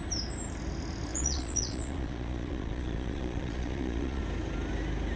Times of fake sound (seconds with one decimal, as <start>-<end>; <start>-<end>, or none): 1.1-4.2